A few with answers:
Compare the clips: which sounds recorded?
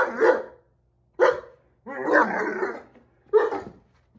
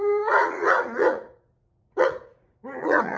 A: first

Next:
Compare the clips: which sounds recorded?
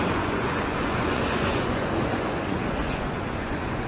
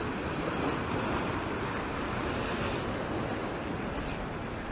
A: second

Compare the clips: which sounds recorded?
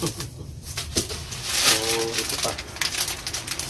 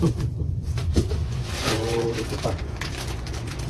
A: first